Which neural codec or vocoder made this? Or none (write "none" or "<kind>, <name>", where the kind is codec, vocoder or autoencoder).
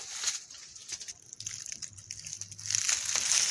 none